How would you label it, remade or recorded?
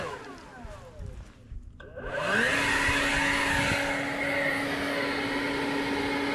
recorded